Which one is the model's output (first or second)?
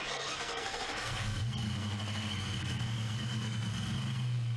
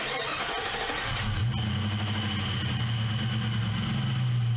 first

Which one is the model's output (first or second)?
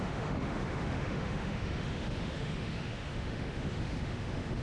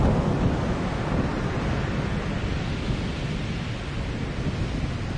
first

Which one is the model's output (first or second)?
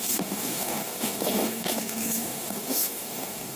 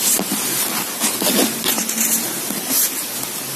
first